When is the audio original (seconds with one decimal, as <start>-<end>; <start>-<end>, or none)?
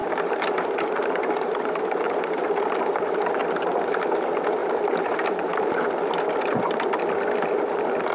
2.4-4.6; 6.0-8.1